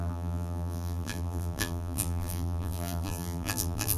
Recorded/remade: remade